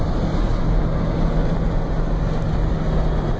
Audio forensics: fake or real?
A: real